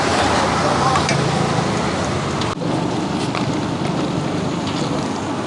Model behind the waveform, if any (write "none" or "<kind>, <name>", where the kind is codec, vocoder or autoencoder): none